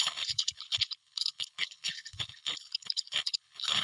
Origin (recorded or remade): remade